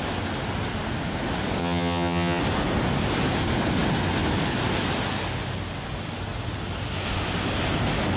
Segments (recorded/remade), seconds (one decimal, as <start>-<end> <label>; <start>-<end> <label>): 0.0-1.6 recorded; 1.6-2.4 remade; 2.4-8.2 recorded